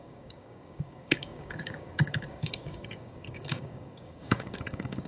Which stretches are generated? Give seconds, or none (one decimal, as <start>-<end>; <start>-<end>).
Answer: 0.0-5.1